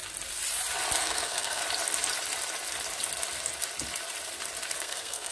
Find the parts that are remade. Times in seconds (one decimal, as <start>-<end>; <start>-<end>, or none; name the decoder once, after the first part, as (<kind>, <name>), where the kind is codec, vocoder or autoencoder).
1.0-1.6 (codec, SNAC); 4.8-5.3